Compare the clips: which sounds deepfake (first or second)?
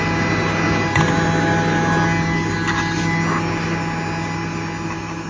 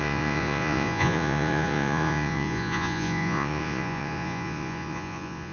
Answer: second